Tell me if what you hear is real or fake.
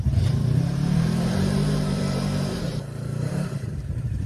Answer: fake